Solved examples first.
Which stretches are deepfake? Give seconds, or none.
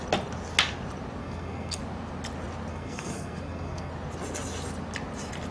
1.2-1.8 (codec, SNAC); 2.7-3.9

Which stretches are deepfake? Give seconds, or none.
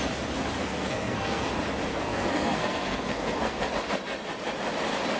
0.6-1.5 (codec, SNAC); 1.9-3.7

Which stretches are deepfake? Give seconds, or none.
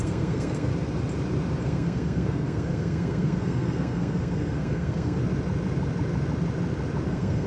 0.0-0.7 (codec, SNAC); 1.6-5.2; 7.1-7.5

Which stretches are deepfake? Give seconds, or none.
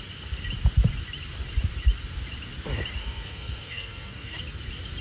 3.0-4.4 (codec, SNAC)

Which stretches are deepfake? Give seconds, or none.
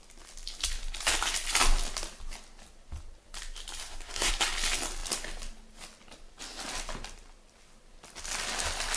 3.8-4.3 (codec, SNAC)